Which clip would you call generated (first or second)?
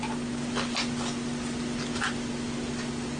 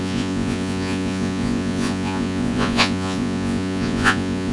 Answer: second